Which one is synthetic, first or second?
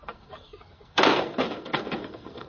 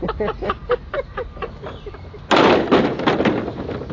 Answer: first